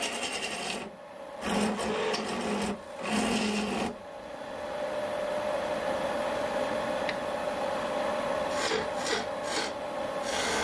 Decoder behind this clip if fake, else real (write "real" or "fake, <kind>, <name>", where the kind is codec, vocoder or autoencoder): real